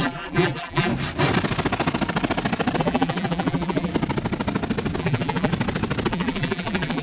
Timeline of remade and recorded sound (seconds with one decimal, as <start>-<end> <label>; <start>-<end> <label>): 0.0-0.9 remade; 0.9-2.8 recorded; 2.8-3.9 remade; 3.9-5.0 recorded; 5.0-5.5 remade; 5.5-6.1 recorded; 6.1-7.0 remade